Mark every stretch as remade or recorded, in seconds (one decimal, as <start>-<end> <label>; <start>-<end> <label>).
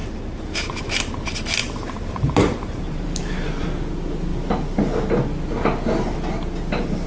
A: 0.0-0.8 remade; 0.8-1.6 recorded; 1.6-3.6 remade; 3.6-7.1 recorded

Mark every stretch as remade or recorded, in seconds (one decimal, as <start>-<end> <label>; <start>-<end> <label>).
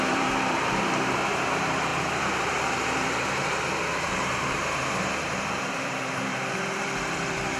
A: 0.0-7.6 remade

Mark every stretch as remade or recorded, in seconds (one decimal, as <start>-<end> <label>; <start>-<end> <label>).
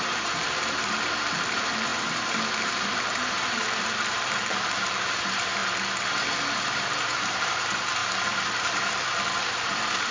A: 0.0-5.6 remade; 5.6-6.6 recorded; 6.6-10.1 remade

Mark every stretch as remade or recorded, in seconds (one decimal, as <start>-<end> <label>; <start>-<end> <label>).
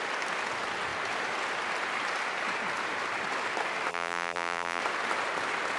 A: 0.0-3.9 recorded; 3.9-4.8 remade; 4.8-5.8 recorded